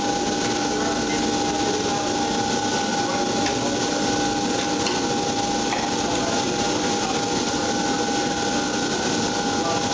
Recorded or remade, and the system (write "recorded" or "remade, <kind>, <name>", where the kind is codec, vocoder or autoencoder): recorded